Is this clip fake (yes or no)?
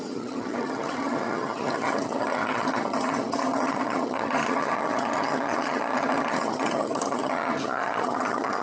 yes